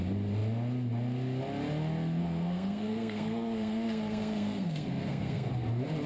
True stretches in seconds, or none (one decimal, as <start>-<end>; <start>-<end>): 0.0-2.2; 5.5-6.1